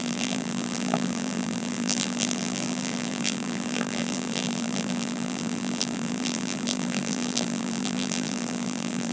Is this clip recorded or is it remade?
remade